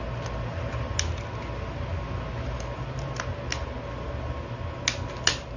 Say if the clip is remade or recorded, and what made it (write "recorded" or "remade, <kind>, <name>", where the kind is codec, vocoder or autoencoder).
recorded